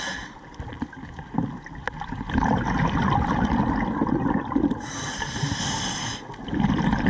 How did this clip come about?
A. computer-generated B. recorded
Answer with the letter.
B